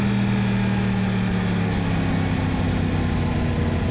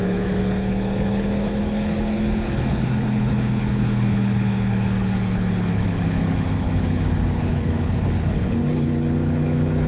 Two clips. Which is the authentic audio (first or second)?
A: first